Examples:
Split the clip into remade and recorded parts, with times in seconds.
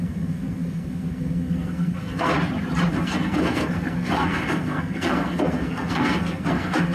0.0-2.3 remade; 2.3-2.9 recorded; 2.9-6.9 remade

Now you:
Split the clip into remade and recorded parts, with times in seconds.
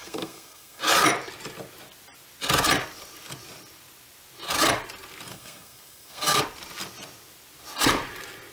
0.0-0.8 remade; 0.8-5.3 recorded; 5.3-6.4 remade; 6.4-8.5 recorded